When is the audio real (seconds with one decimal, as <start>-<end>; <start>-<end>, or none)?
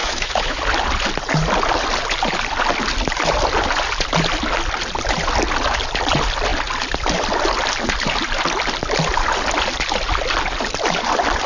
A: 0.6-11.5